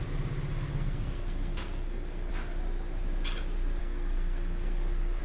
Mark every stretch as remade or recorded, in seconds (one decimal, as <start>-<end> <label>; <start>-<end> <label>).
0.0-0.5 recorded; 0.5-2.3 remade; 2.3-3.8 recorded; 3.8-5.2 remade